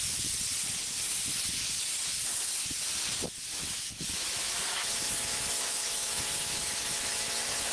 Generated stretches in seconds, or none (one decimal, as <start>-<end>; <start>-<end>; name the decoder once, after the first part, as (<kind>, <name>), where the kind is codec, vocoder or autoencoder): 3.4-7.7 (autoencoder, DAC-VAE)